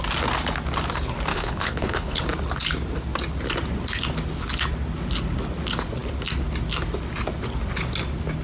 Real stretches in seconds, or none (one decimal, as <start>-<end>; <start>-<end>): 0.0-1.3; 2.2-8.4